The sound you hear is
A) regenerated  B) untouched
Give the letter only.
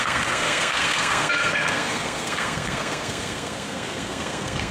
A